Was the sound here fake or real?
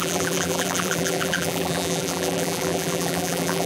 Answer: fake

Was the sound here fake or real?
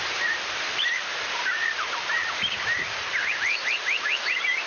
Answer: fake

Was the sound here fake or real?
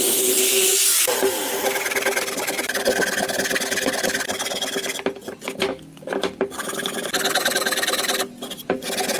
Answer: real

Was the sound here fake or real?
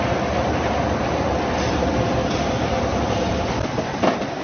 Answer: fake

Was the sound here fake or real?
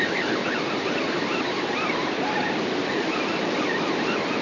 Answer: fake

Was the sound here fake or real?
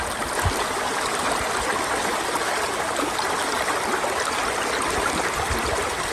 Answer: real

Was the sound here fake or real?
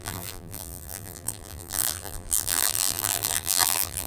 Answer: fake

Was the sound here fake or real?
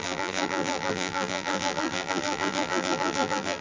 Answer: fake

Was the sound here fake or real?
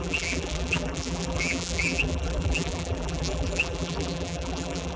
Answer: fake